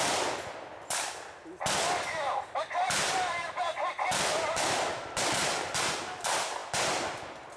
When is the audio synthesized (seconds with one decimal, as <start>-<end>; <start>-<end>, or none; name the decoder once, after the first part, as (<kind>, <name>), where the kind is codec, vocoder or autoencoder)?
none